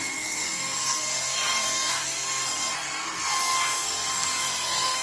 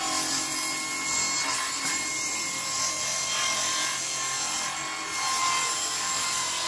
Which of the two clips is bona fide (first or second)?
second